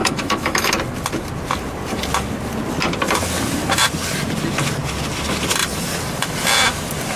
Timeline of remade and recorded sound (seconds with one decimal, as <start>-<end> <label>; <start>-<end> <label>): 0.0-0.7 remade; 0.7-7.2 recorded